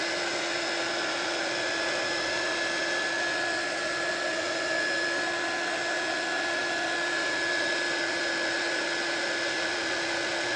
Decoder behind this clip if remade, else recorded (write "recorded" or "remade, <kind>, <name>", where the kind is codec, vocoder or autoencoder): recorded